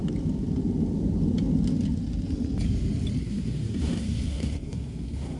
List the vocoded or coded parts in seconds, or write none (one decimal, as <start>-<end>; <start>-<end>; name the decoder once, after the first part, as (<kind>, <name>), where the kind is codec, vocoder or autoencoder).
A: 3.2-5.4 (codec, SNAC)